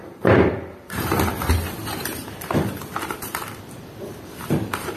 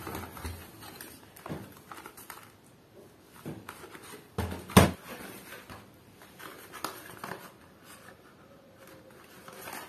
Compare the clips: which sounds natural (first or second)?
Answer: second